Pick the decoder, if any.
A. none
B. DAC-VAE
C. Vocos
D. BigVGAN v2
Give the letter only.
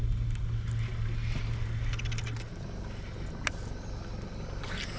A